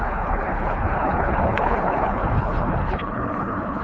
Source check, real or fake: fake